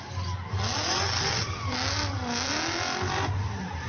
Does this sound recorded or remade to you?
recorded